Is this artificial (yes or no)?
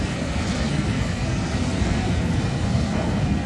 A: yes